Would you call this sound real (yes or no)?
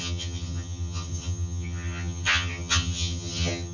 no